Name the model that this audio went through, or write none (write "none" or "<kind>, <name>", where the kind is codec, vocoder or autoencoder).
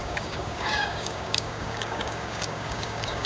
codec, DAC